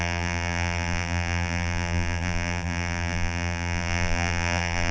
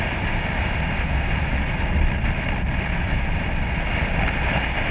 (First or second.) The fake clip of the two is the first